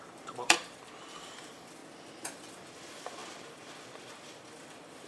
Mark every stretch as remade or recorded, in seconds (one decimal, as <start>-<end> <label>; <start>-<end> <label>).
0.0-1.8 remade; 1.8-2.3 recorded; 2.3-5.1 remade